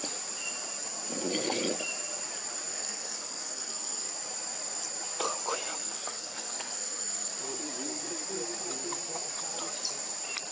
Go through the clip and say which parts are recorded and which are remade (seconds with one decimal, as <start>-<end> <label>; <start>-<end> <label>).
0.0-2.7 recorded; 2.7-4.1 remade; 4.1-5.8 recorded; 5.8-7.3 remade; 7.3-10.5 recorded